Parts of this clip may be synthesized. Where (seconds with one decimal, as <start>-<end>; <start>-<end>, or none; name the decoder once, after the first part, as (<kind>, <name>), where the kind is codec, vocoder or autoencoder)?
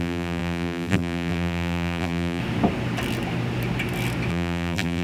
0.0-2.4 (vocoder, BigVGAN v2); 4.3-5.0